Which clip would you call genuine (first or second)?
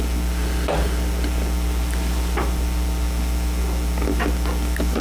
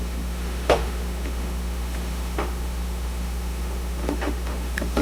first